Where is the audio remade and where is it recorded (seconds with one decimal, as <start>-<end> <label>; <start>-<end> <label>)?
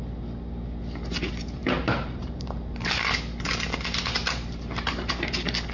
0.0-1.6 recorded; 1.6-3.0 remade; 3.0-5.7 recorded